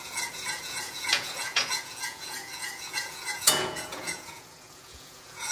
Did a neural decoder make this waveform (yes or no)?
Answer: yes